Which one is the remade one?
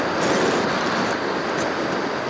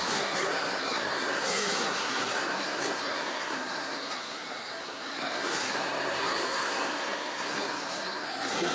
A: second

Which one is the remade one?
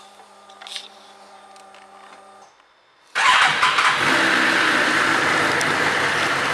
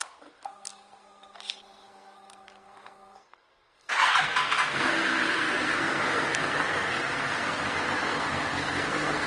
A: second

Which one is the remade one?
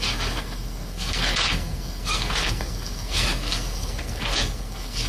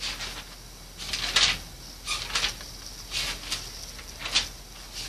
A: first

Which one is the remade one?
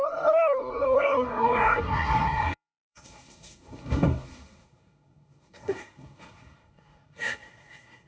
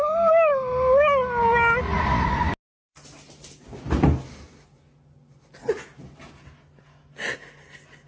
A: first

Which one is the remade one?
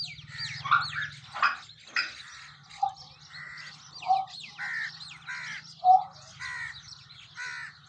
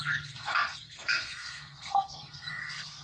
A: second